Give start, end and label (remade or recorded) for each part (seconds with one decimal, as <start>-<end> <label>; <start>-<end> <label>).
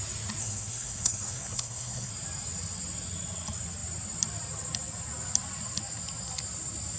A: 0.0-0.4 recorded; 0.4-2.1 remade; 2.1-7.0 recorded